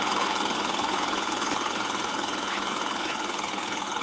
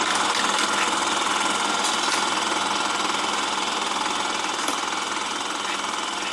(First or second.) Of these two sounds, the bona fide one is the second